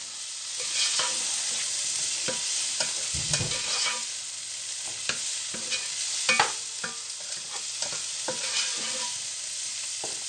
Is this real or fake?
real